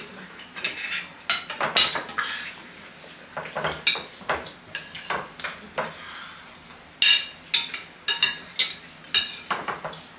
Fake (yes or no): no